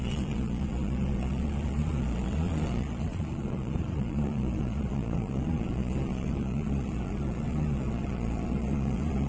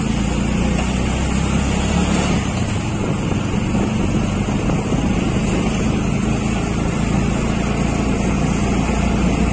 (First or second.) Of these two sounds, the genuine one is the second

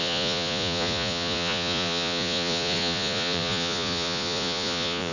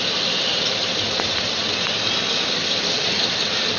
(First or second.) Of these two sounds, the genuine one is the second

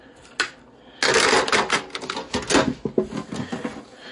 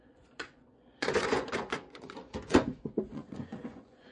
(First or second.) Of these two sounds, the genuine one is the first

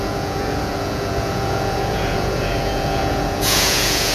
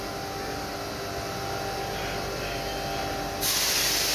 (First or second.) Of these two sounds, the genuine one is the second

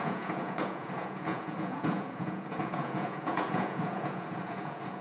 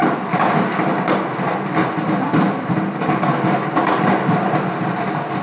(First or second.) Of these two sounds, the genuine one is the second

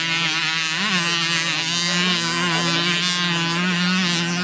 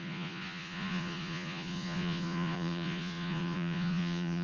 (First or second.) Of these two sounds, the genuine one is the first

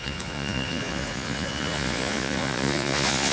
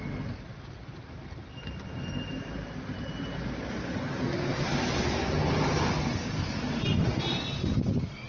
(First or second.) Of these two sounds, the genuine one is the second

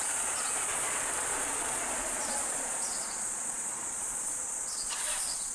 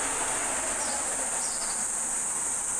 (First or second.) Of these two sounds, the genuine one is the second